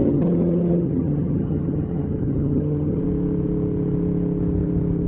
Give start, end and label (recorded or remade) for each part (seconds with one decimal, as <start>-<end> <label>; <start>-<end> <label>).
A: 0.0-3.0 remade; 3.0-5.1 recorded